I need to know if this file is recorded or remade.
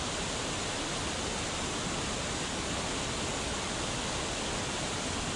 recorded